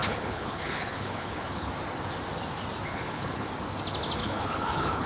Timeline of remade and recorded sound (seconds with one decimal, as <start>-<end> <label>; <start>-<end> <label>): 0.0-1.7 remade; 1.7-2.9 recorded; 2.9-3.5 remade; 3.5-4.2 recorded; 4.2-5.1 remade